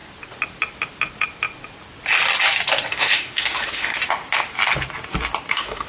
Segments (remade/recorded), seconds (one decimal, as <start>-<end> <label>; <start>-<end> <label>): 0.0-2.9 recorded; 2.9-3.9 remade; 3.9-5.5 recorded; 5.5-5.9 remade